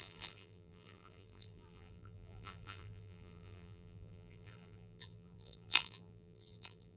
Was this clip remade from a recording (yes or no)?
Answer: yes